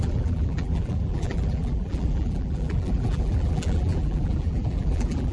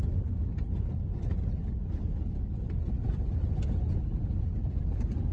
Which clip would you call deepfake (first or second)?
first